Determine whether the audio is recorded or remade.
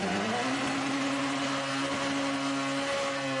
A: recorded